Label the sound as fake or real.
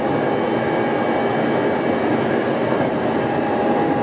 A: real